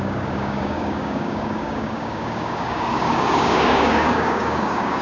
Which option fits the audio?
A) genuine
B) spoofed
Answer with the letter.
B